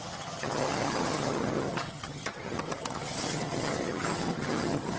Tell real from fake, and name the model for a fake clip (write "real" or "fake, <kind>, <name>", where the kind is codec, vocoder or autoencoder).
fake, vocoder, HiFi-GAN